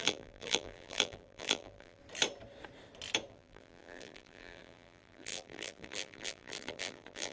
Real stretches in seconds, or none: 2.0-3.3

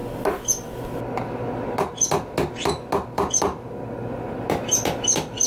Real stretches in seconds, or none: 0.0-5.5

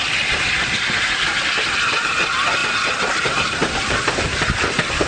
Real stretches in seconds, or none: 2.6-4.1

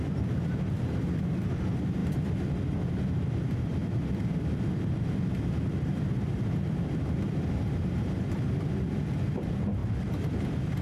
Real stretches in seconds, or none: none